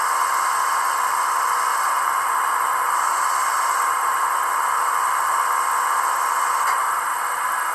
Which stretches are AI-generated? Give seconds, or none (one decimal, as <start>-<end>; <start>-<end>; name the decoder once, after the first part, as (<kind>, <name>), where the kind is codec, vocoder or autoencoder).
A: 1.7-4.2 (vocoder, BigVGAN v2)